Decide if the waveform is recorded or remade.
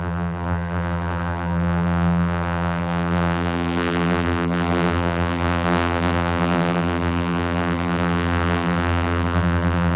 remade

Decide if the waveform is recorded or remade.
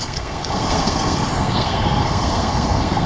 remade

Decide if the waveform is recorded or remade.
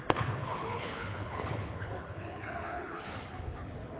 remade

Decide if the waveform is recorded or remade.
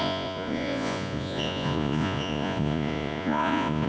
remade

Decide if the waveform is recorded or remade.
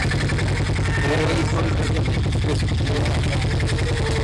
recorded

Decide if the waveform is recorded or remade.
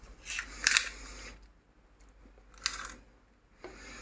recorded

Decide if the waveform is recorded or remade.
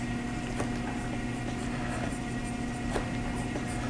recorded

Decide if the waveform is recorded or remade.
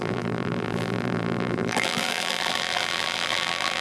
remade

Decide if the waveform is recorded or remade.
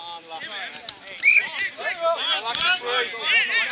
recorded